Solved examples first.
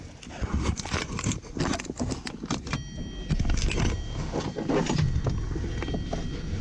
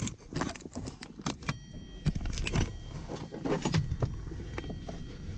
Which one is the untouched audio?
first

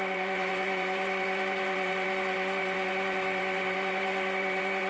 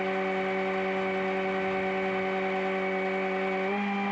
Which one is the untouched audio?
second